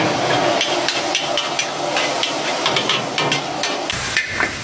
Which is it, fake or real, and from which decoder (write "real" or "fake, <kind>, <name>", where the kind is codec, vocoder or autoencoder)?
real